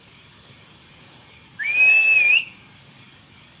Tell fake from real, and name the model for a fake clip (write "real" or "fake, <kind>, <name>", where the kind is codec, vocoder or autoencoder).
fake, codec, DAC